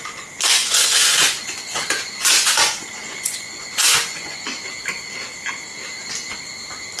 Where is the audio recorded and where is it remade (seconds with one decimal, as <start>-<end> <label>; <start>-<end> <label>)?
0.0-0.6 recorded; 0.6-4.7 remade; 4.7-7.0 recorded